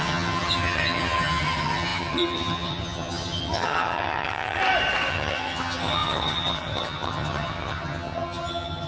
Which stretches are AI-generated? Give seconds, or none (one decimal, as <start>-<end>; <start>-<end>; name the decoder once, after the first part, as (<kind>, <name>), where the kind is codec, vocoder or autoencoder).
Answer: 0.0-4.6 (vocoder, HiFi-GAN); 5.1-8.9

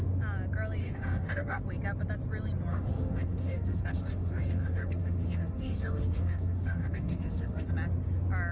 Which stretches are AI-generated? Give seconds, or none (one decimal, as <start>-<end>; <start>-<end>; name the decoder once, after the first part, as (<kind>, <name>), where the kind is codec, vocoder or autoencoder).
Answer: 0.8-1.6 (autoencoder, DAC-VAE); 2.7-7.7

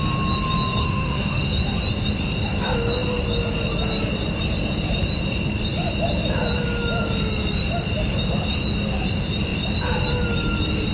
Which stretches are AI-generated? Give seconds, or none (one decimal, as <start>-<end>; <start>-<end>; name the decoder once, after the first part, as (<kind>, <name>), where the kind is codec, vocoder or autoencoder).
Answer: 0.8-1.6 (autoencoder, DAC-VAE)

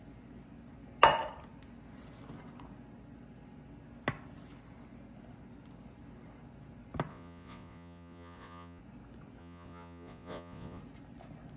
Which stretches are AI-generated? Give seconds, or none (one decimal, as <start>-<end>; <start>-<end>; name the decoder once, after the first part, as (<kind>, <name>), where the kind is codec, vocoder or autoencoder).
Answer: 7.1-8.8 (vocoder, Vocos); 9.4-10.8

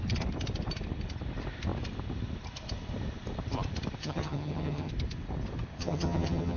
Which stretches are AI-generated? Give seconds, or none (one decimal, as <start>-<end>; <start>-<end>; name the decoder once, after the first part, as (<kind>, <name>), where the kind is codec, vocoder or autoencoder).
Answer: 4.0-4.9 (vocoder, HiFi-GAN); 5.8-6.6

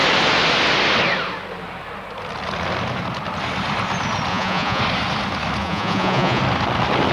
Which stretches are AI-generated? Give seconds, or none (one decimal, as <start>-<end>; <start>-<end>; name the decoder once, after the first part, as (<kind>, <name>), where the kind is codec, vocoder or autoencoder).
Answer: 4.3-4.8 (vocoder, Vocos); 5.6-6.4

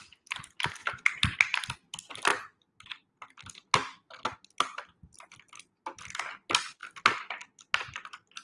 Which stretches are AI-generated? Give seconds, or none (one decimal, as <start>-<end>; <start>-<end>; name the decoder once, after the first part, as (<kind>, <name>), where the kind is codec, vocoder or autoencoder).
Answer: none

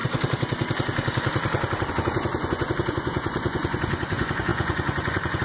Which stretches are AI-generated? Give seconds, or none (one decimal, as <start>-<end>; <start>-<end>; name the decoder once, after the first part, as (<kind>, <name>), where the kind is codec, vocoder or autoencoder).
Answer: 1.9-5.4 (vocoder, Vocos)